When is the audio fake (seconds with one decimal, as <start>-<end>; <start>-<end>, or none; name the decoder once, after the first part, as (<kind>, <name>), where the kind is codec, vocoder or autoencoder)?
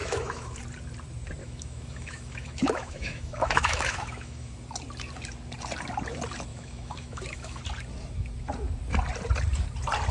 0.0-0.6 (autoencoder, DAC-VAE); 1.4-4.5; 6.5-7.6